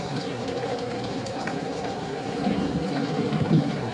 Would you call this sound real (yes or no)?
no